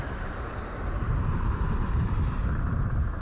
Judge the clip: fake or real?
fake